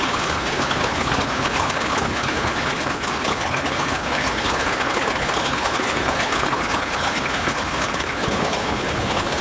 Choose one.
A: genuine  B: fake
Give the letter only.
B